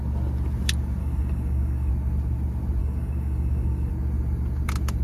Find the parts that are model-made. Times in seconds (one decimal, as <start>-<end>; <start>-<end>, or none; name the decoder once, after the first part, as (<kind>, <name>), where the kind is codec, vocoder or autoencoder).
1.0-1.9 (codec, DAC); 2.8-3.9